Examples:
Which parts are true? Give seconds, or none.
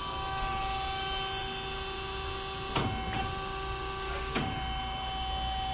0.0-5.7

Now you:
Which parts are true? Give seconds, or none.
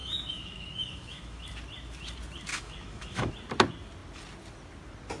1.5-2.5; 3.3-5.2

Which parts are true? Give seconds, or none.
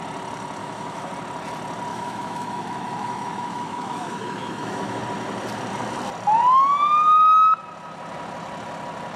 0.0-0.6; 1.1-1.9; 5.0-9.2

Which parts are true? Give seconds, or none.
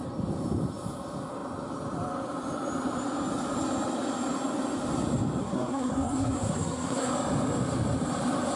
0.0-5.4; 7.1-8.6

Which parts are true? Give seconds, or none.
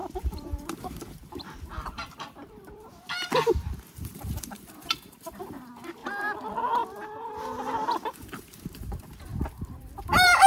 6.0-7.9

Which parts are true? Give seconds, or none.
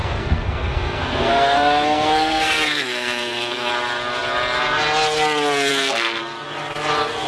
3.7-5.7; 6.2-7.3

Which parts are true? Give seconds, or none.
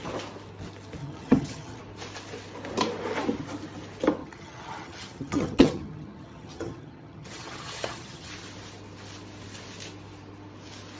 0.0-1.0; 1.8-4.2; 8.3-11.0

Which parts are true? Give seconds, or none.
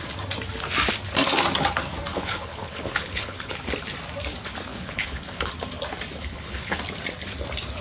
0.0-2.1; 3.6-4.7; 5.5-6.2; 6.8-7.8